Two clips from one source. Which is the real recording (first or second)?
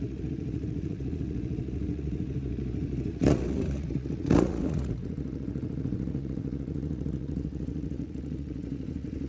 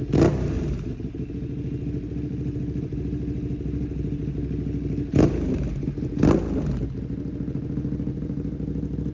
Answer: second